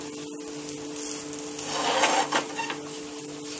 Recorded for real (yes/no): yes